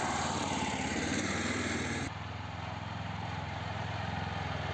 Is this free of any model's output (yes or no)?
no